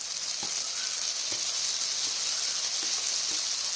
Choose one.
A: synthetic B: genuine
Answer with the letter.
B